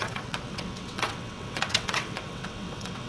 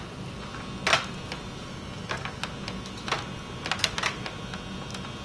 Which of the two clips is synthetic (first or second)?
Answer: first